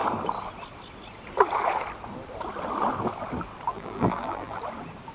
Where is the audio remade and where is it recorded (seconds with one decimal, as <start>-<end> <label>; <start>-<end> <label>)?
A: 0.0-3.7 recorded; 3.7-4.6 remade; 4.6-5.1 recorded